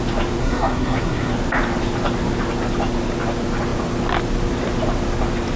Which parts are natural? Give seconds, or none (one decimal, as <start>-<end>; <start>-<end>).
0.0-0.4; 1.3-5.6

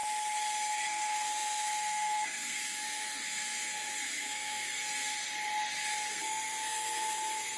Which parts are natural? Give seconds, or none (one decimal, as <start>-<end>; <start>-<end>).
0.0-0.7; 5.2-6.1

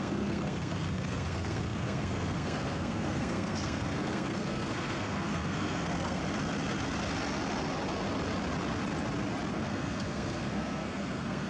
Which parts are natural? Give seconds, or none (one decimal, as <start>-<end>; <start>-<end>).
6.2-9.5

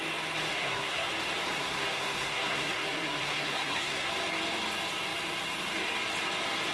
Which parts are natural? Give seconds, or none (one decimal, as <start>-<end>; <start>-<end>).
0.0-0.5; 1.1-1.5; 4.1-6.7

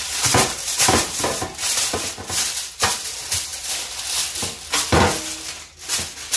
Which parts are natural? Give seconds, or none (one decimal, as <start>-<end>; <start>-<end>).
0.0-6.4

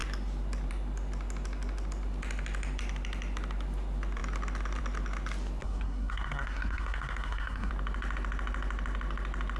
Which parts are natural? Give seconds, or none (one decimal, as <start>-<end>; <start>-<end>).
0.0-5.6; 7.7-9.6